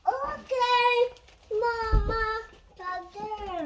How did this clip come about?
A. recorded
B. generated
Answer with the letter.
A